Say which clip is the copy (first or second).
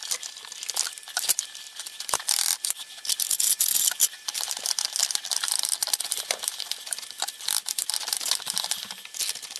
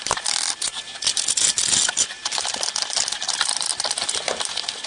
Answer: first